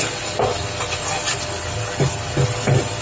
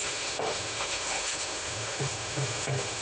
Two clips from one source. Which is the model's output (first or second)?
second